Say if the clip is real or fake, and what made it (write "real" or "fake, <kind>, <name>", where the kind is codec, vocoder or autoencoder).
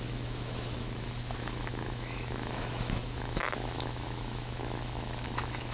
fake, autoencoder, DAC-VAE